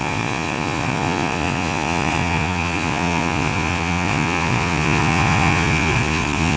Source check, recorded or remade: remade